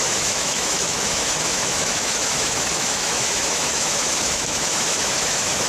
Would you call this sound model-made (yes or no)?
yes